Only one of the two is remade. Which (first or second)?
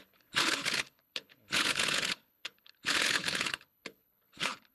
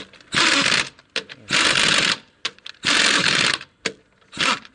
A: first